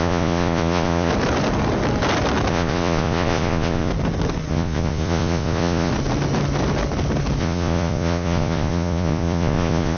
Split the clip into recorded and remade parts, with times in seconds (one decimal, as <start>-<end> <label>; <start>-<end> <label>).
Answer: 0.0-1.1 remade; 1.1-2.5 recorded; 2.5-3.9 remade; 3.9-4.5 recorded; 4.5-5.9 remade; 5.9-7.4 recorded; 7.4-10.0 remade